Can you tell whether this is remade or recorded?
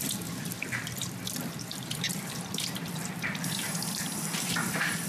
remade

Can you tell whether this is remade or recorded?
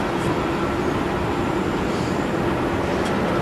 remade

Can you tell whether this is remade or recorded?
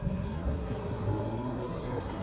remade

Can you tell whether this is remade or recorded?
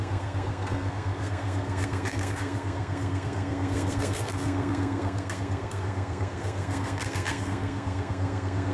remade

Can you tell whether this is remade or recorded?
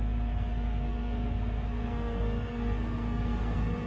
remade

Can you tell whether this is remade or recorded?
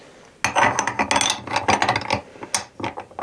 recorded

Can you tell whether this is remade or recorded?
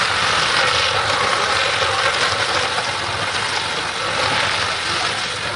recorded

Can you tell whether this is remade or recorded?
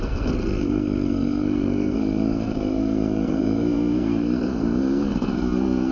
remade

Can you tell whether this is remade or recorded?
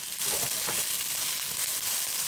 recorded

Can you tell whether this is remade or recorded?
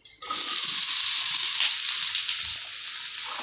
recorded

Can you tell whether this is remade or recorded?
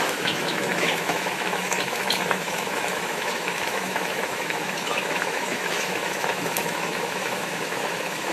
remade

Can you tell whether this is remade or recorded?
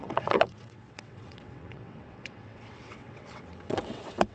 remade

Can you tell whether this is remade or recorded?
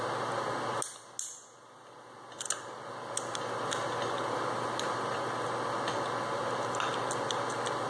recorded